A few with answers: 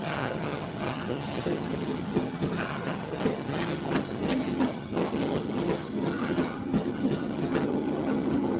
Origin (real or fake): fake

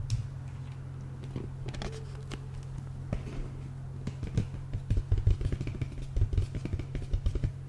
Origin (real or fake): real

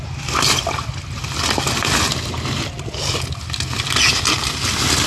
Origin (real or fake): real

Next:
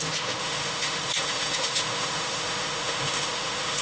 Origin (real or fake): fake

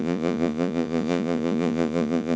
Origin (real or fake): fake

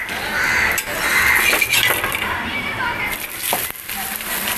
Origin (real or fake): fake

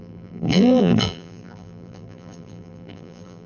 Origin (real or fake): fake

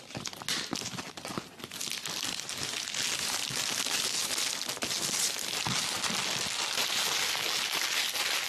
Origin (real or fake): real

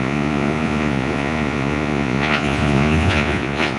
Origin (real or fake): fake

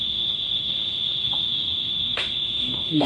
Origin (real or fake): fake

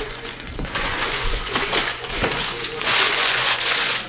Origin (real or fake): fake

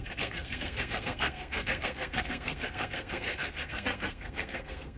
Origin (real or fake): fake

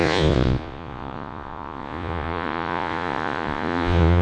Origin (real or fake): fake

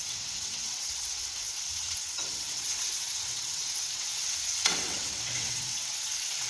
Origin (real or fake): fake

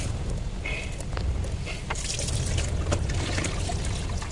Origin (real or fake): real